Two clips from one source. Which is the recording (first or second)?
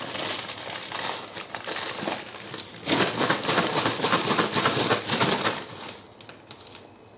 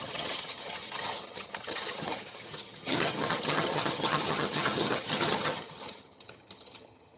first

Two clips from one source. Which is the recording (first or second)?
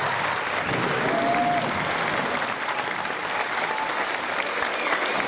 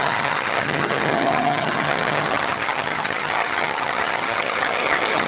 first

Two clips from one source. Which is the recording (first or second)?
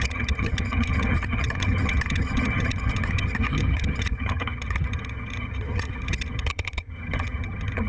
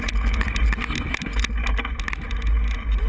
second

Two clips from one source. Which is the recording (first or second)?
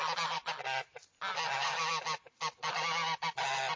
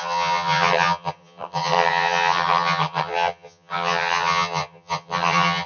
first